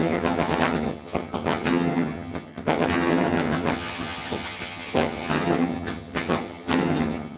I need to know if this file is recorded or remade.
remade